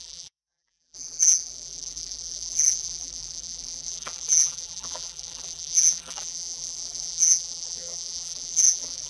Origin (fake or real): fake